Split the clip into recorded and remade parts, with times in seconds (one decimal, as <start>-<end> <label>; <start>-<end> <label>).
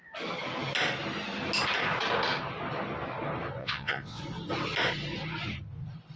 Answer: 0.0-3.6 recorded; 3.6-4.2 remade; 4.2-6.2 recorded